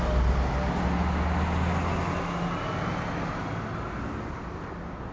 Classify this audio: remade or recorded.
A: recorded